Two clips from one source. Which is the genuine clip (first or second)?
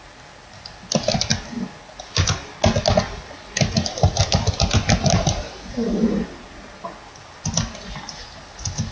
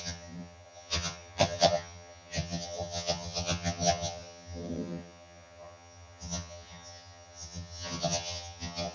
first